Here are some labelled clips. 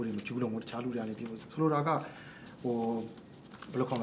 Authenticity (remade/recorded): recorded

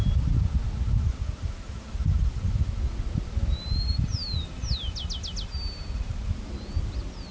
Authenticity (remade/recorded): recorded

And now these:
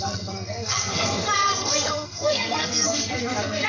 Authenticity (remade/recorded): remade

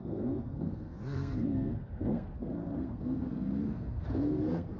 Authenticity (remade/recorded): remade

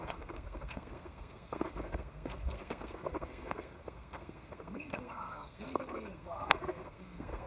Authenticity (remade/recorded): remade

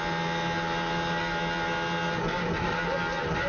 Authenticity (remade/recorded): recorded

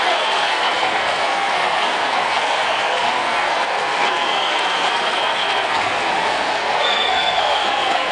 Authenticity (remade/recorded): remade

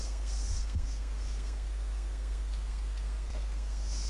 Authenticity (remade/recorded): remade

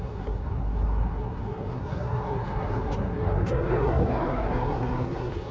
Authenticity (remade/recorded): remade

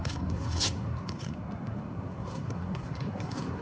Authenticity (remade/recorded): remade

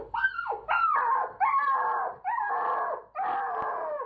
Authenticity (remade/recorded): recorded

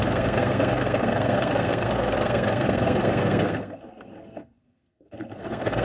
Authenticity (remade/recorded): remade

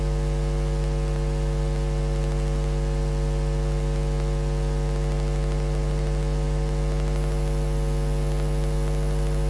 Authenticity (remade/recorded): recorded